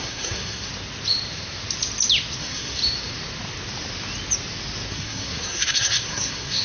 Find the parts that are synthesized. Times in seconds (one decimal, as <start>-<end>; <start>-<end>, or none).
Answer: 0.0-0.7; 2.4-2.8; 4.9-6.6